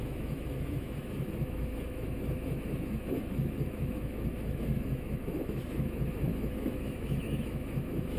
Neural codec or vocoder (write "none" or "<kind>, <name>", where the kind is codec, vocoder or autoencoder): autoencoder, DAC-VAE